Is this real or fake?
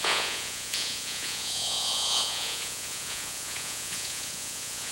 fake